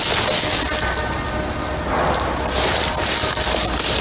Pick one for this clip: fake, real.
real